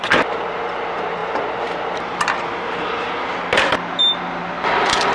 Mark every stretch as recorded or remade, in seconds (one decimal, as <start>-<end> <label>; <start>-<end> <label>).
0.0-5.1 recorded

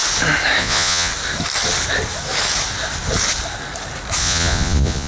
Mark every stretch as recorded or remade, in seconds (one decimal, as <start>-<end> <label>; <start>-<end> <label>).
0.0-0.6 recorded; 0.6-1.1 remade; 1.1-4.2 recorded; 4.2-5.1 remade